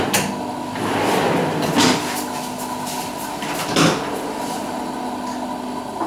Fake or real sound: real